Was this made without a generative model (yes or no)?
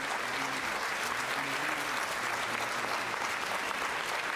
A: yes